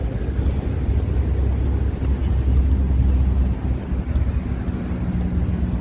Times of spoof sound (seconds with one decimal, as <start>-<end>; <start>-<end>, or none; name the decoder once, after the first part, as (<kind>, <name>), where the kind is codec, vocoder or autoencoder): none